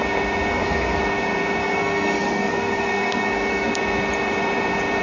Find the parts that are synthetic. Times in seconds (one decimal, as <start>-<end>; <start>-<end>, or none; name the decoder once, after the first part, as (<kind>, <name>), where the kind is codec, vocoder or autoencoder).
0.5-1.0 (codec, SNAC); 1.6-3.7